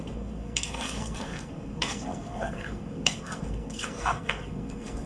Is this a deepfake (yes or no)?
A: yes